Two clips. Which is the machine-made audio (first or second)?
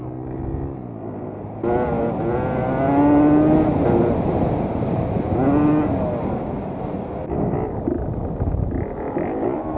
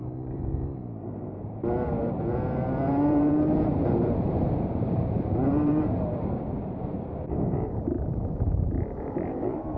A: second